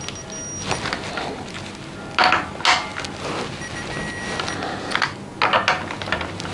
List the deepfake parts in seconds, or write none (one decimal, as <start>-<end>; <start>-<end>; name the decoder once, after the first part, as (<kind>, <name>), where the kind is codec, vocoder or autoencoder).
none